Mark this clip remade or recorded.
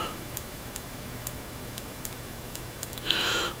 remade